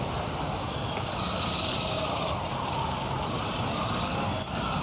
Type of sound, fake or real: real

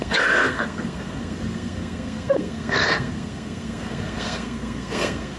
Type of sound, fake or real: fake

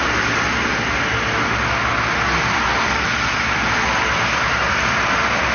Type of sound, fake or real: real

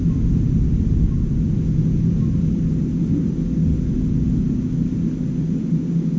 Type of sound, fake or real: real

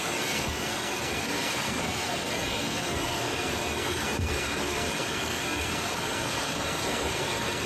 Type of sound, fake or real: fake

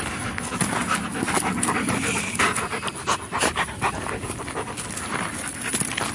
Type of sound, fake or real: real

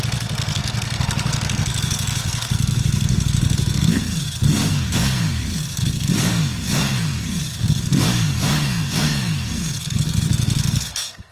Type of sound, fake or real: fake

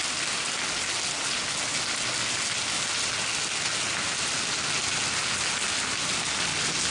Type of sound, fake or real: real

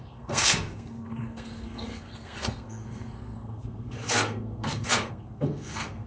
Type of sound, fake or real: fake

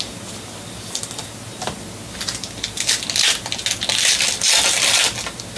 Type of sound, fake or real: real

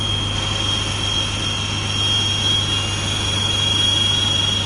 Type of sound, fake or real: real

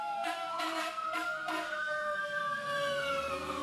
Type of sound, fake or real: fake